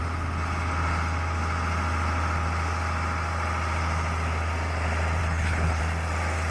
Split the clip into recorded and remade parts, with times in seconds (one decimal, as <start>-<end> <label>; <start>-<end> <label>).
0.0-5.2 recorded; 5.2-5.8 remade; 5.8-6.5 recorded